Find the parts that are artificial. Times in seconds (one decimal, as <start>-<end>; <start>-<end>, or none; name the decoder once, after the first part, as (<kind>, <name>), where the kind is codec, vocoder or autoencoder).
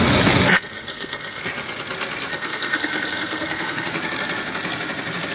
0.5-1.4 (codec, SNAC); 2.3-3.9